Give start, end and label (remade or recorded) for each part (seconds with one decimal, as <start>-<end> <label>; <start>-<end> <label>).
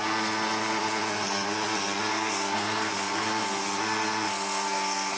0.0-2.1 recorded; 2.1-3.6 remade; 3.6-4.3 recorded; 4.3-5.2 remade